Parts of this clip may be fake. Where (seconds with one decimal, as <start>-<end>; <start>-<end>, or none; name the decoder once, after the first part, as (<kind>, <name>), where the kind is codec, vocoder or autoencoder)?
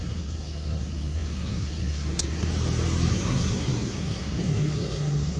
0.0-2.5 (codec, SNAC); 3.1-5.4